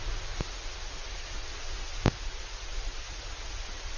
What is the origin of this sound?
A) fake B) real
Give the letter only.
A